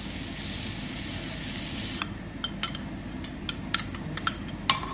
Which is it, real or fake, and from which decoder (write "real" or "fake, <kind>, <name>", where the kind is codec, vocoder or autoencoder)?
real